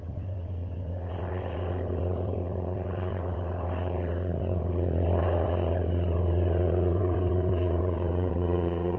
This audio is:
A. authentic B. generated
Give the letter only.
B